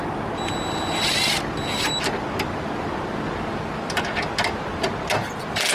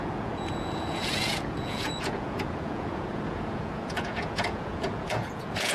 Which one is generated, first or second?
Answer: second